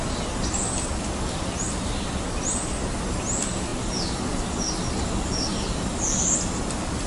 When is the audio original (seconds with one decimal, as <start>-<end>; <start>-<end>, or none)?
0.0-7.1